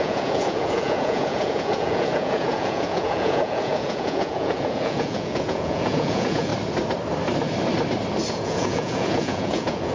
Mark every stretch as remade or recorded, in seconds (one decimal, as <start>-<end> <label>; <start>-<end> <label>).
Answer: 0.0-6.5 remade; 6.5-8.3 recorded; 8.3-9.9 remade